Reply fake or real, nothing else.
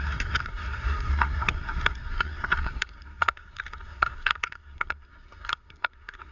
fake